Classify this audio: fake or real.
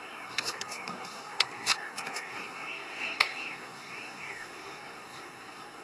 fake